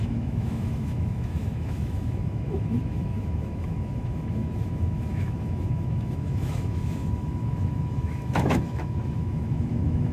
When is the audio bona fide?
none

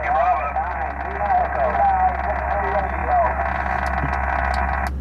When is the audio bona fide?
0.0-5.0

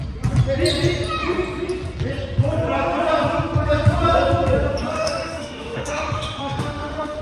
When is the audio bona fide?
0.0-4.9